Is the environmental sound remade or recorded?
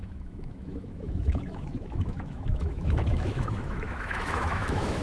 remade